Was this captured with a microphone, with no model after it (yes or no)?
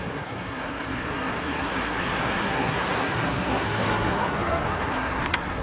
no